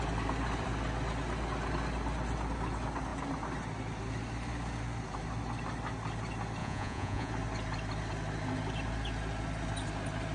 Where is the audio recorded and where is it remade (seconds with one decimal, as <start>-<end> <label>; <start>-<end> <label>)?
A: 0.0-6.6 recorded; 6.6-7.3 remade; 7.3-10.3 recorded